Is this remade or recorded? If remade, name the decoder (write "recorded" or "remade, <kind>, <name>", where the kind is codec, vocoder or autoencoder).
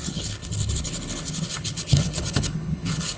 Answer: remade, codec, HILCodec